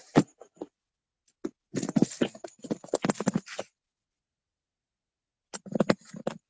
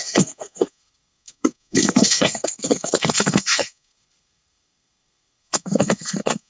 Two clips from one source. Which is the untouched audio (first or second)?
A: first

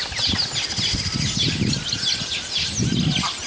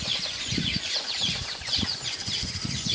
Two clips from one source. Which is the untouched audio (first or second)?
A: first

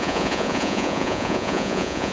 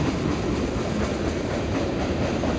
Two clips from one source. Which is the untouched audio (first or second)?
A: second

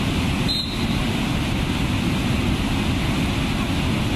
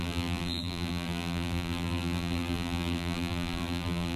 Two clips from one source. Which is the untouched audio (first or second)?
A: first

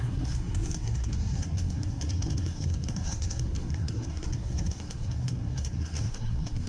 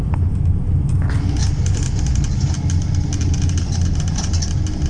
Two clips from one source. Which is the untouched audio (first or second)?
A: second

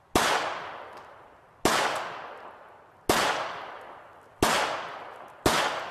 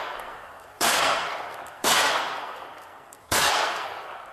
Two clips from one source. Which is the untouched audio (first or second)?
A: first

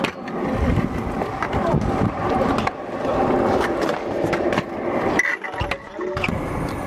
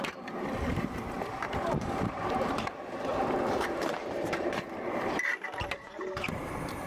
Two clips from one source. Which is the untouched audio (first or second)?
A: first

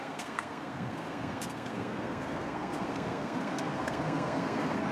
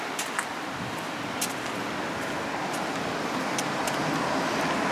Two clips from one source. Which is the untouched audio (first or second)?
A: second